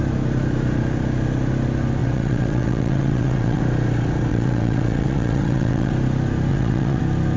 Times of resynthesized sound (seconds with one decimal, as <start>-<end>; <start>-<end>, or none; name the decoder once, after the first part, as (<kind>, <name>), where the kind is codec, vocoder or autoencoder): 2.0-3.6 (vocoder, WaveNeXt); 4.3-5.9; 6.5-7.0